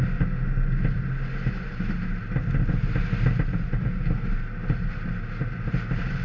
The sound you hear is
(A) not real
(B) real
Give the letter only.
B